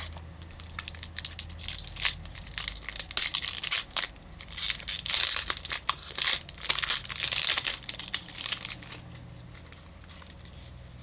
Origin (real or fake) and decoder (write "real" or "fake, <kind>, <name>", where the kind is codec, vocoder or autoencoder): real